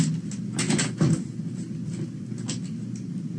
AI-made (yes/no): no